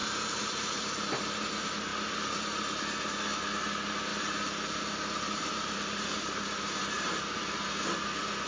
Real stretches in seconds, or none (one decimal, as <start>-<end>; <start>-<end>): 1.3-4.1; 7.7-8.5